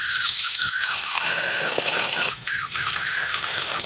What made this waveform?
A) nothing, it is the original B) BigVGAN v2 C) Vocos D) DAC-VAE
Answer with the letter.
D